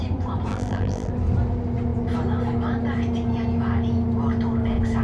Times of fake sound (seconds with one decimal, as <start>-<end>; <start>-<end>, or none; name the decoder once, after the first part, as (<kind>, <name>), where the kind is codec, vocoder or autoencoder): 0.5-1.1 (vocoder, BigVGAN v2)